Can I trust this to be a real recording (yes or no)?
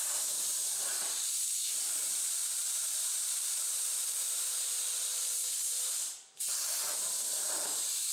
no